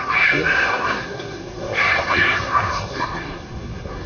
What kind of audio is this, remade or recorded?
remade